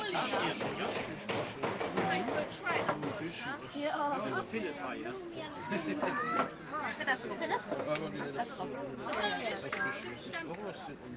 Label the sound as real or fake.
real